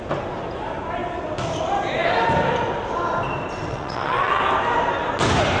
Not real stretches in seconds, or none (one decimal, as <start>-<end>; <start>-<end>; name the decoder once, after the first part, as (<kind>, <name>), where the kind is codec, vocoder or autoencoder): 3.7-4.4 (vocoder, WaveNeXt)